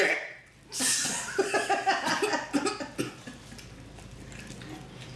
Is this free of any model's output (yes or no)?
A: yes